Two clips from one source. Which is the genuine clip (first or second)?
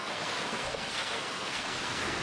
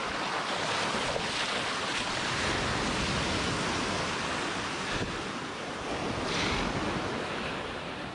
second